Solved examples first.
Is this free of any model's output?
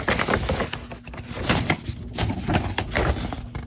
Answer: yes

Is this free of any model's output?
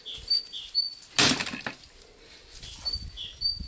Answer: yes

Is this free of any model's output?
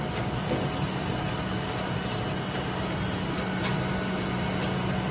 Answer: yes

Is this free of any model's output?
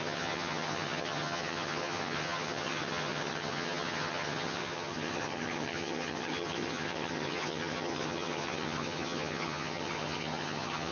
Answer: no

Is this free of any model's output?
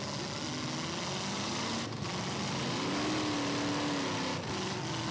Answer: yes